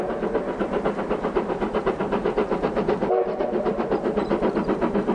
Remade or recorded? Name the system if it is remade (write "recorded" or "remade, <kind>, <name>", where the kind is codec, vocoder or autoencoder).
recorded